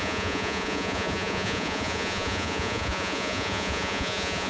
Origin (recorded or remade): remade